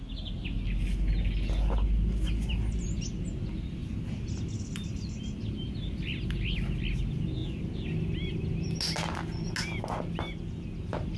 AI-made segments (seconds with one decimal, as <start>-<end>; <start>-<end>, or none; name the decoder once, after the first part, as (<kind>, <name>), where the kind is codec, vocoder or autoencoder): none